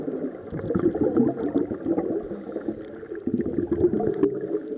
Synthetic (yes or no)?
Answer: no